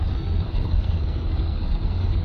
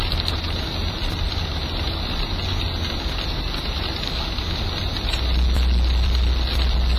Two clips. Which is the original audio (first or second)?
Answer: second